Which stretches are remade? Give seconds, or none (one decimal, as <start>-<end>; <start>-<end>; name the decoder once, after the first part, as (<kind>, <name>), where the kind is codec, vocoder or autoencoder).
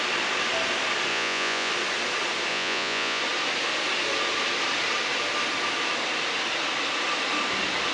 1.1-1.7 (vocoder, Vocos); 2.5-3.2